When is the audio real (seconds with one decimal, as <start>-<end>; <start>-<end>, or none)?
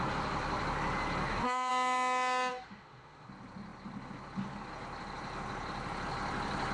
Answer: 0.0-1.2; 1.7-2.5; 3.3-6.7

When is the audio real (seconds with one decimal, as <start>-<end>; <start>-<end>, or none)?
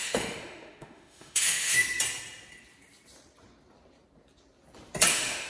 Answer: 1.8-5.1